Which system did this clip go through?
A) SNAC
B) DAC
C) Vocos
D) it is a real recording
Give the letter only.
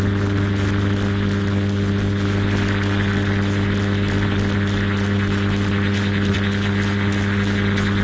D